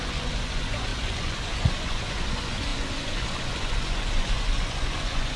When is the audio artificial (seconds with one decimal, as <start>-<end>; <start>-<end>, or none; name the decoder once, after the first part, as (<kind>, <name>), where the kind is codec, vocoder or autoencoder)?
0.0-5.4 (vocoder, Vocos)